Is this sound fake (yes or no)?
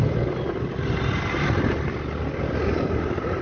no